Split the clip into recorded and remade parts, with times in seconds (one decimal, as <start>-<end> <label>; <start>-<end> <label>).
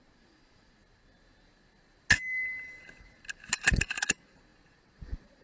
0.0-0.8 remade; 0.8-4.0 recorded; 4.0-5.4 remade